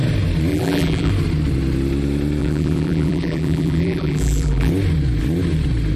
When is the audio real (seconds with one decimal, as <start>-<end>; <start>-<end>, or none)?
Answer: 0.0-0.5; 1.1-2.4; 4.7-6.0